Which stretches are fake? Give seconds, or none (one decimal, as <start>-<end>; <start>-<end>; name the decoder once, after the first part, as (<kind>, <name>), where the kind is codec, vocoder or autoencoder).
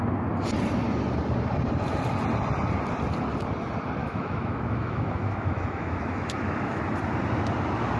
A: 4.0-6.8 (autoencoder, DAC-VAE)